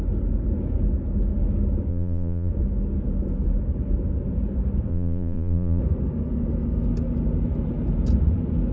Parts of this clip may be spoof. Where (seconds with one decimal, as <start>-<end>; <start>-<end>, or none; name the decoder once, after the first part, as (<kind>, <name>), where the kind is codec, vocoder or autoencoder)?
1.9-2.5 (vocoder, Vocos); 4.9-5.8